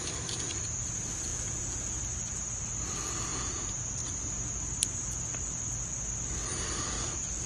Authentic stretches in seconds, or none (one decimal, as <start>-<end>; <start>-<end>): 0.0-1.3; 2.0-3.3; 3.8-7.5